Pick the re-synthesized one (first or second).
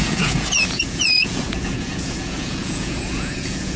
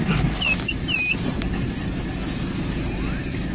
first